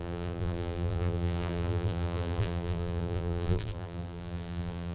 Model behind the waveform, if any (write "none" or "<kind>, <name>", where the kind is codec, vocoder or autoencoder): vocoder, BigVGAN v2